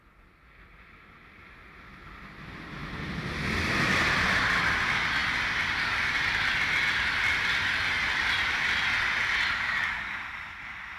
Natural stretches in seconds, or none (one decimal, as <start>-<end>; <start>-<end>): 0.0-11.0